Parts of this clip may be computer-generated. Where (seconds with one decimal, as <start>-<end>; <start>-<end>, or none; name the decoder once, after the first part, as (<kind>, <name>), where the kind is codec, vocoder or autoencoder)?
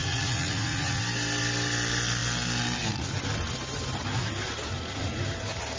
0.0-1.0 (vocoder, Vocos)